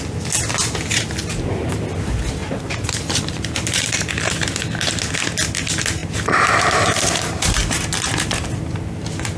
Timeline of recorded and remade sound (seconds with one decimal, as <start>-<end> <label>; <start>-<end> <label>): 0.0-1.2 recorded; 1.2-1.7 remade; 1.7-2.4 recorded; 2.4-4.1 remade; 4.1-6.0 recorded; 6.0-8.6 remade; 8.6-9.4 recorded